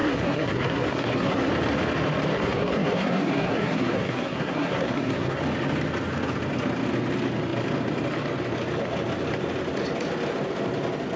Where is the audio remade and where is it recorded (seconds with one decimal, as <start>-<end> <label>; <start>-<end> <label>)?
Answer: 0.0-1.5 remade; 1.5-2.3 recorded; 2.3-5.4 remade; 5.4-11.2 recorded